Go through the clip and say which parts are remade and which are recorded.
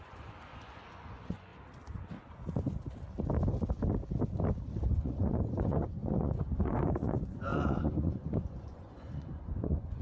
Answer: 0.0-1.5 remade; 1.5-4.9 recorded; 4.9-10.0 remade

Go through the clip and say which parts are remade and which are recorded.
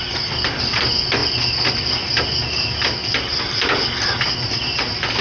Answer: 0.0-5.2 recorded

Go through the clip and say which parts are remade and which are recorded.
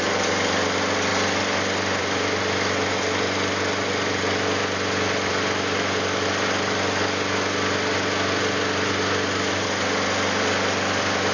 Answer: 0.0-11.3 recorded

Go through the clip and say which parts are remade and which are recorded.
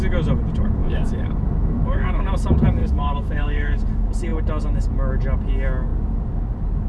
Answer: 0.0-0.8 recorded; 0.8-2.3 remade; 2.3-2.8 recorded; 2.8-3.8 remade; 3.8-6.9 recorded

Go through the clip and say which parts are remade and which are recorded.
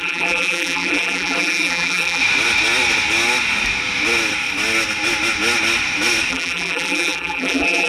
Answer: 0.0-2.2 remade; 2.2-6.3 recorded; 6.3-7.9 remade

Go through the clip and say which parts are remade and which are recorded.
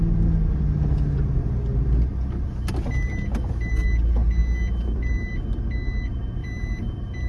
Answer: 0.0-6.4 recorded; 6.4-7.3 remade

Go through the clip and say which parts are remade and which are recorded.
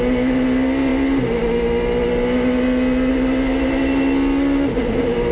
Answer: 0.0-5.3 recorded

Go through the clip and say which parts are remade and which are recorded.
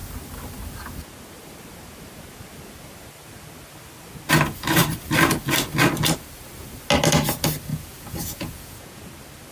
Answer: 0.0-7.7 recorded; 7.7-9.0 remade; 9.0-9.5 recorded